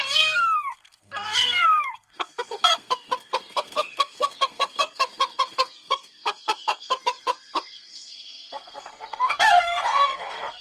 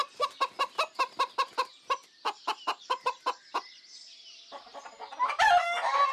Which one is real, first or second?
second